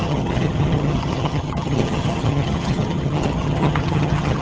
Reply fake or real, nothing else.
fake